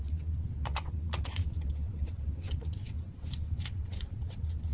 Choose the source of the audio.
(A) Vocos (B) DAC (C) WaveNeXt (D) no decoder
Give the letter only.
C